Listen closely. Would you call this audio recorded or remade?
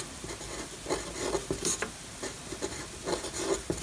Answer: recorded